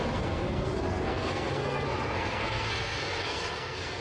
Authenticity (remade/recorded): remade